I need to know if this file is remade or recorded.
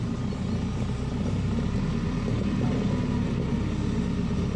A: recorded